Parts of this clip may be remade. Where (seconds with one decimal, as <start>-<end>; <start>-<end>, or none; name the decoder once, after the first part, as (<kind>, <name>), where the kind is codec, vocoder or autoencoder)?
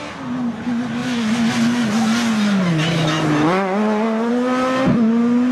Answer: none